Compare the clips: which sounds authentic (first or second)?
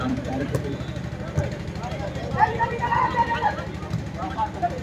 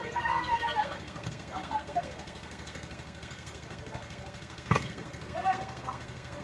first